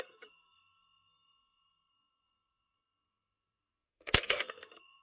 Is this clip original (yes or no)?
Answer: no